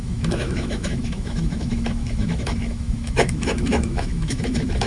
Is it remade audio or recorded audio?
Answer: remade